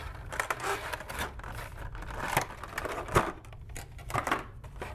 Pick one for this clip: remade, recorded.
remade